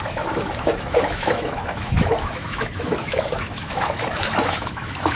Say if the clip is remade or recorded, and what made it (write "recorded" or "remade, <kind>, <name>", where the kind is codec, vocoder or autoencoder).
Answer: remade, autoencoder, DAC-VAE